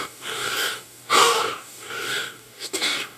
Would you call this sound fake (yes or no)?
yes